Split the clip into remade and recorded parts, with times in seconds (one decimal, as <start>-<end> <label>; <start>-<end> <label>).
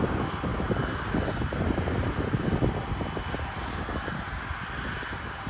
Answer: 0.0-5.5 recorded